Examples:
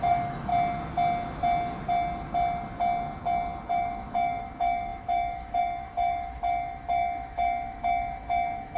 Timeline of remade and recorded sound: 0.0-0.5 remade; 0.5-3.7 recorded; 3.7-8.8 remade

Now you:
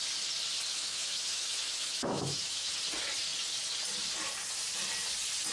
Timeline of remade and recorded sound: 0.0-0.7 recorded; 0.7-2.7 remade; 2.7-5.5 recorded

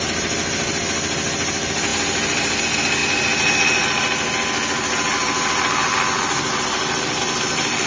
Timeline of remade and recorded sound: 0.0-7.9 recorded

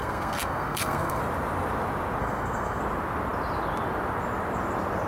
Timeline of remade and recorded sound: 0.0-1.2 remade; 1.2-2.2 recorded; 2.2-2.8 remade; 2.8-5.1 recorded

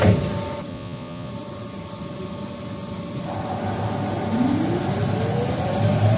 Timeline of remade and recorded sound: 0.0-0.7 recorded; 0.7-1.3 remade; 1.3-6.2 recorded

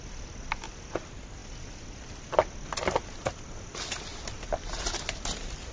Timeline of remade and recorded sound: 0.0-5.7 recorded